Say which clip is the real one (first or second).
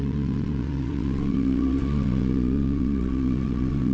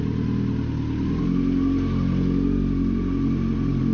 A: second